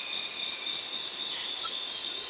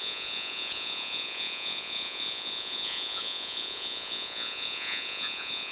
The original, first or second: first